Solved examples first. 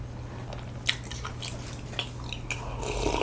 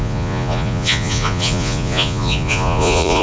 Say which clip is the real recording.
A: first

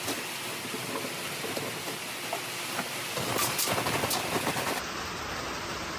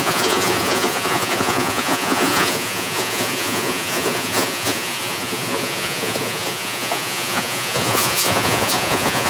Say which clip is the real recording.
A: first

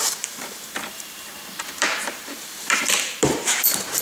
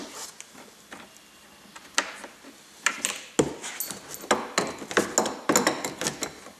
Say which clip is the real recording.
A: second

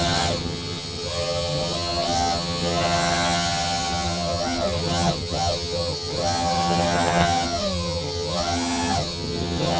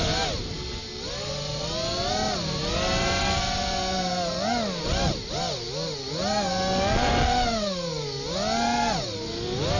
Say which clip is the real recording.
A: second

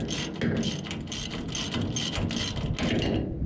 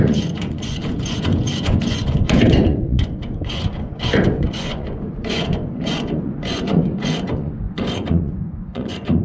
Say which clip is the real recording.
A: first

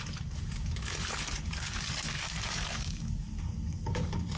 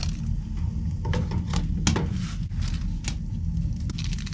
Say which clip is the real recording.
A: second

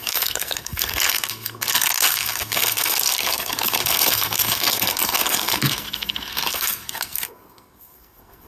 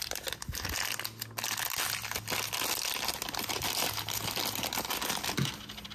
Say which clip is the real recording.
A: second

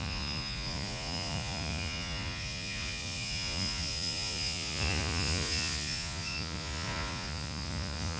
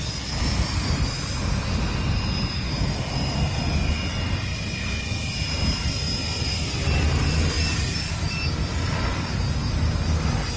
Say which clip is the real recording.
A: second